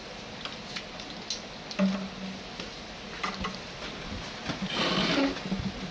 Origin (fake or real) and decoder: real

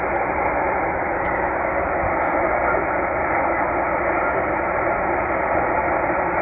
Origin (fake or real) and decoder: real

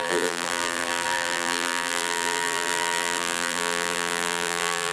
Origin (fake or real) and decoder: fake, vocoder, BigVGAN v2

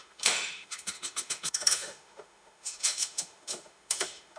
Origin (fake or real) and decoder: fake, autoencoder, DAC-VAE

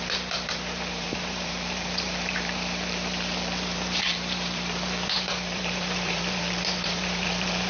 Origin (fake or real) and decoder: fake, vocoder, BigVGAN v2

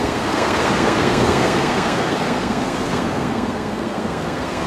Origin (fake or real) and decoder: fake, codec, SNAC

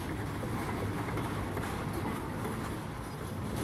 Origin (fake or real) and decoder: real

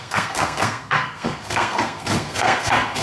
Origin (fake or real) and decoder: fake, codec, SNAC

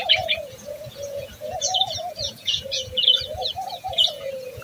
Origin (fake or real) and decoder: fake, vocoder, Vocos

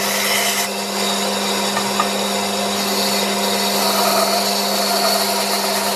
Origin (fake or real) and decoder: real